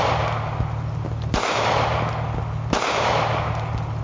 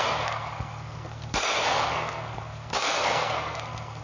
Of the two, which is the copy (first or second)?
second